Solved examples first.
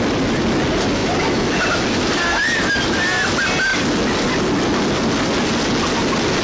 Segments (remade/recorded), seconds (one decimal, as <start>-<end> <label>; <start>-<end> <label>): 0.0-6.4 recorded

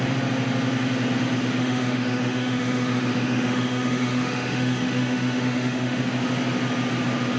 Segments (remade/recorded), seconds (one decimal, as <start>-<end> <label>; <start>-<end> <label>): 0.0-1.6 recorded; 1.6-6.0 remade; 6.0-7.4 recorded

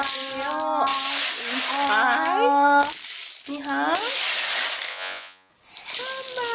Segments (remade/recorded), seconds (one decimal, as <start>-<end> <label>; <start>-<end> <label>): 0.0-4.9 recorded; 4.9-5.5 remade; 5.5-6.5 recorded